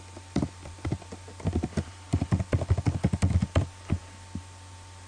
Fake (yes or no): no